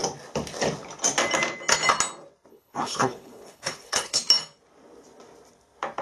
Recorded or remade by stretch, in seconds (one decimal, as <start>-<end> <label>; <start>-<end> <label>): 0.0-2.5 recorded; 2.5-4.2 remade; 4.2-6.0 recorded